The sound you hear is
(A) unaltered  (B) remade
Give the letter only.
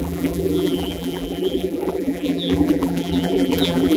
B